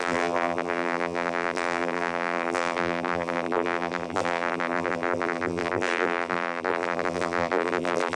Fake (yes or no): yes